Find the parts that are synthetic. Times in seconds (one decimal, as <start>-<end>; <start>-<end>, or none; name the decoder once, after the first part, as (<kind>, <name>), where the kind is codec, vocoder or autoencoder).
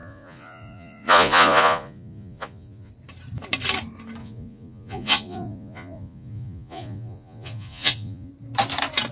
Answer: 0.0-2.9 (vocoder, Vocos); 4.2-8.3